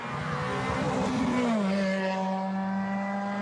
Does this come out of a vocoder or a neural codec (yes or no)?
no